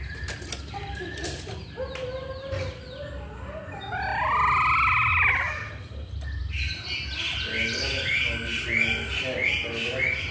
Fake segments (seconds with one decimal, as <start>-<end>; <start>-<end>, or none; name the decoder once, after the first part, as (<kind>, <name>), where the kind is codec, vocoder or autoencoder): none